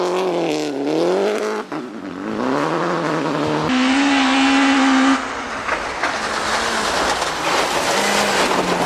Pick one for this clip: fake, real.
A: real